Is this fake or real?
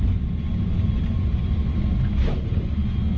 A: real